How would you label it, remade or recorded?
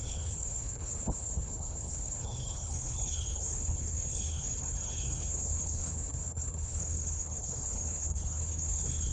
remade